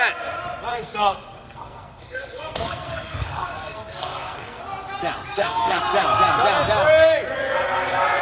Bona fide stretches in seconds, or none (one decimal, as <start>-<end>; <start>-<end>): 0.0-0.7; 4.6-5.3; 5.8-8.2